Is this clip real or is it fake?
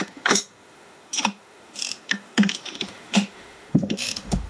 fake